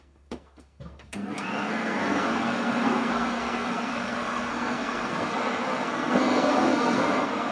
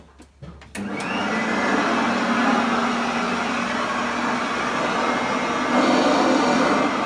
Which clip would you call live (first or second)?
second